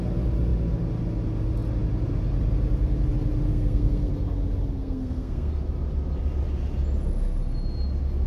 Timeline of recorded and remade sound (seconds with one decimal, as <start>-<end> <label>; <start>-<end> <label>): 0.0-3.5 recorded; 3.5-4.1 remade; 4.1-4.8 recorded; 4.8-5.5 remade; 5.5-8.3 recorded

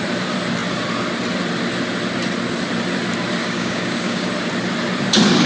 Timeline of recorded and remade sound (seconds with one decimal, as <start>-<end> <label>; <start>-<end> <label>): 0.0-3.4 recorded; 3.4-4.3 remade; 4.3-5.5 recorded

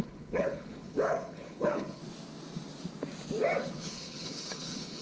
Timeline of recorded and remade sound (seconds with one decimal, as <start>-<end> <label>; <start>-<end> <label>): 0.0-2.0 remade; 2.0-3.6 recorded; 3.6-5.0 remade

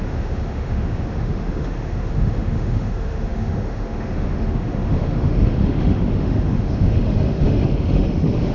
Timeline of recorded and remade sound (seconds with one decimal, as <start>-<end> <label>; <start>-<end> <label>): 0.0-8.5 remade

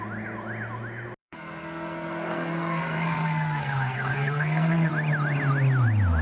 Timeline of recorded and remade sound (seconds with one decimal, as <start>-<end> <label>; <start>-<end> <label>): 0.0-1.2 recorded; 1.2-4.9 remade; 4.9-6.2 recorded